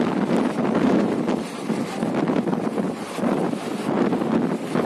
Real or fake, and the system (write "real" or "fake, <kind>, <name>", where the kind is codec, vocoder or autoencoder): real